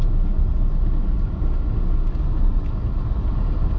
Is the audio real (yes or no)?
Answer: yes